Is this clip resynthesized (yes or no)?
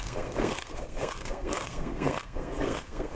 yes